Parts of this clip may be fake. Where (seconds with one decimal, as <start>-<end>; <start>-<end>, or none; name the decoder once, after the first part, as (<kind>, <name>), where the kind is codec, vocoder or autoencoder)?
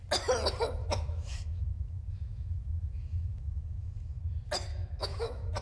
0.8-4.2 (autoencoder, DAC-VAE); 4.7-5.6